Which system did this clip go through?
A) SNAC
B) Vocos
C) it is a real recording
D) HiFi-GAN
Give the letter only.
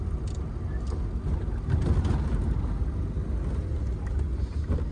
C